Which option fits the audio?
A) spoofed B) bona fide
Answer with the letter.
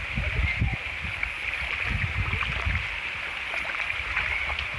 B